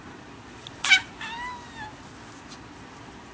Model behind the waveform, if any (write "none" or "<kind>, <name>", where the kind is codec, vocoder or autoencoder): none